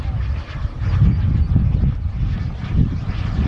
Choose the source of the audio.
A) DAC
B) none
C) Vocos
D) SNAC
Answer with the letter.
B